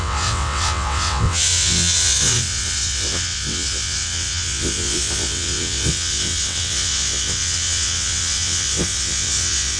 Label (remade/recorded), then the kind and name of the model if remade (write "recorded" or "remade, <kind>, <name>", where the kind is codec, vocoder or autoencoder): remade, vocoder, WaveNeXt